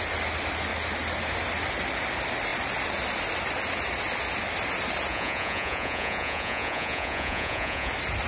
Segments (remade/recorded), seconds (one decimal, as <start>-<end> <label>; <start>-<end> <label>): 0.0-5.1 recorded; 5.1-7.9 remade; 7.9-8.3 recorded